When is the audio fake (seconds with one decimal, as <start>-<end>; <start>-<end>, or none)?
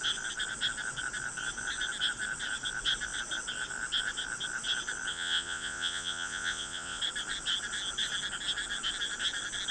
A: 5.1-7.0